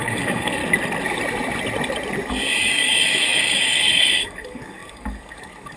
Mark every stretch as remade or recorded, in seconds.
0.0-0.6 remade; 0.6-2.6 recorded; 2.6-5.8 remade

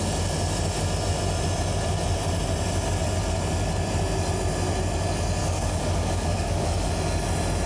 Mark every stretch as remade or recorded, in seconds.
0.0-5.4 recorded; 5.4-6.9 remade; 6.9-7.7 recorded

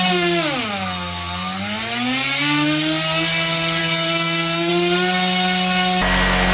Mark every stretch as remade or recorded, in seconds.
0.0-0.7 recorded; 0.7-1.6 remade; 1.6-3.8 recorded; 3.8-4.7 remade; 4.7-6.5 recorded

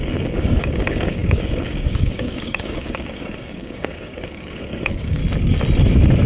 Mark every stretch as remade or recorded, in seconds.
0.0-5.2 remade; 5.2-6.3 recorded

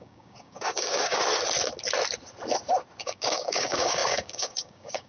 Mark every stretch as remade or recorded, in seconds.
0.0-1.2 remade; 1.2-3.0 recorded; 3.0-5.1 remade

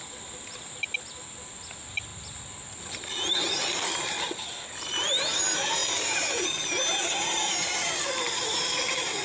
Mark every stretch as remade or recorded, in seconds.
0.0-9.2 recorded

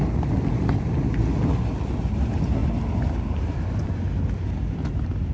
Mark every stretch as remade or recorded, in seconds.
0.0-5.3 recorded